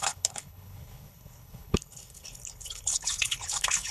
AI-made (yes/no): yes